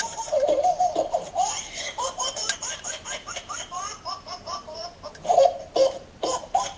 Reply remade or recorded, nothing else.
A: remade